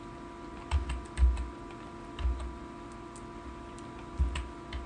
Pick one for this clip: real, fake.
real